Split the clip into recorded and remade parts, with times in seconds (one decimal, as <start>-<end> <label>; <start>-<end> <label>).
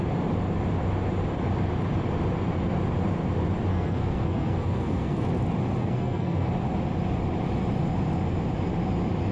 0.0-3.7 recorded; 3.7-5.2 remade; 5.2-5.8 recorded; 5.8-6.5 remade; 6.5-9.3 recorded